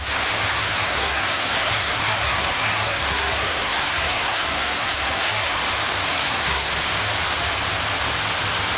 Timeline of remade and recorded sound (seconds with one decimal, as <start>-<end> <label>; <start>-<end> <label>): 0.0-0.5 recorded; 0.5-5.6 remade; 5.6-6.1 recorded; 6.1-6.7 remade; 6.7-8.8 recorded